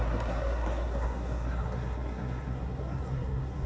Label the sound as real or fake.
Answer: fake